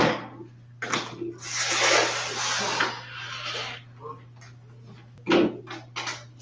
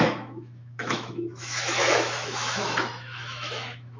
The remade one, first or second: second